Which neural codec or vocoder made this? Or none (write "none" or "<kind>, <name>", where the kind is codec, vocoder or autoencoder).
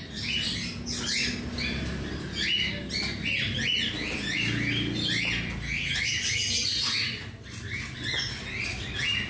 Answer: none